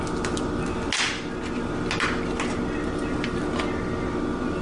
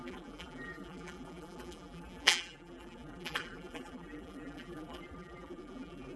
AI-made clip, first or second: second